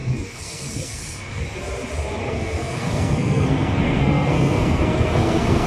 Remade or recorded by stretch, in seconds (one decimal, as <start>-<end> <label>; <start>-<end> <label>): 0.0-1.4 remade; 1.4-2.2 recorded; 2.2-5.7 remade